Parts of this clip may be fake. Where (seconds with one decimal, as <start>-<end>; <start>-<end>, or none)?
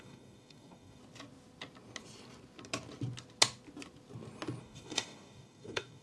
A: 0.0-1.0; 4.6-6.0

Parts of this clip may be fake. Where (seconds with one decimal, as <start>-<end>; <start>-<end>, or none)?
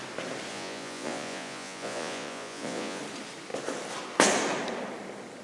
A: 0.5-3.0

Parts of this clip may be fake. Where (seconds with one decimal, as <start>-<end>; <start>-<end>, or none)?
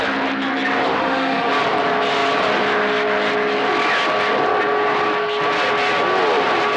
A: 1.0-1.5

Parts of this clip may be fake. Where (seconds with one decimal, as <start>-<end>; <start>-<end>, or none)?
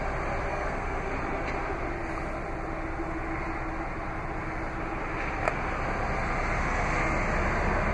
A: 0.5-1.1